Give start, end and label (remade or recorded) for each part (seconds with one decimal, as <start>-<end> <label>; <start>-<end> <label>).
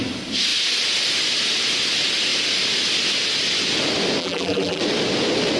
0.0-4.2 recorded; 4.2-4.8 remade; 4.8-5.6 recorded